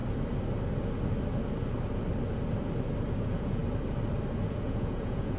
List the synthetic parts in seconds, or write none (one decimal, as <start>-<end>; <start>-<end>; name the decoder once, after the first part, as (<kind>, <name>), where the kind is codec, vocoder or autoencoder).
3.2-3.6 (vocoder, Vocos); 4.4-5.4